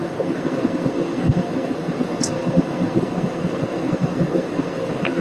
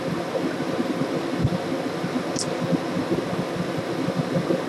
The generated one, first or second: first